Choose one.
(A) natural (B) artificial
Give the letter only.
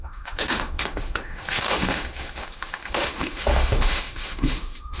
B